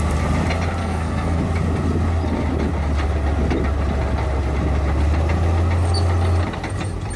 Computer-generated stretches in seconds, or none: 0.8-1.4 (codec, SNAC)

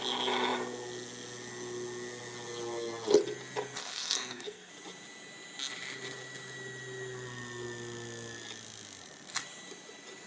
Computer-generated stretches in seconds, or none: 3.8-4.7 (codec, SNAC)

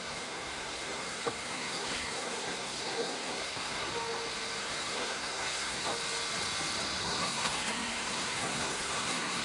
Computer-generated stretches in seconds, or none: 0.0-3.9 (codec, SNAC); 4.6-5.9; 7.0-9.4